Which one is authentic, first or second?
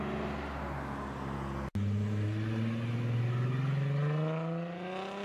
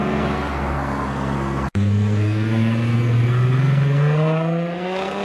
first